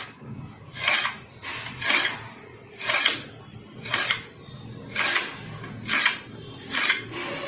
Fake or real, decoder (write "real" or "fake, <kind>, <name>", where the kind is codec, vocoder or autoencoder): real